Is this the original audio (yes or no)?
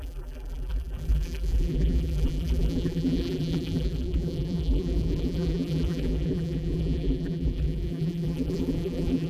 no